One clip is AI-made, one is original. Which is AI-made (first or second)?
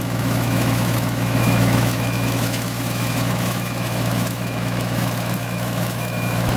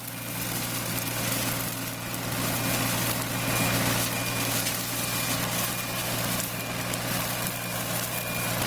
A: first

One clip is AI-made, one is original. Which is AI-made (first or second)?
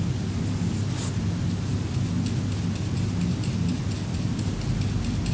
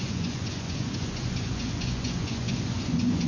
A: second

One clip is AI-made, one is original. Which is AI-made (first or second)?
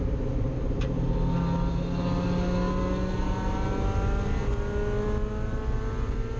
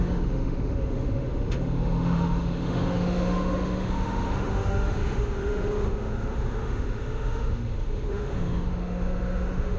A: second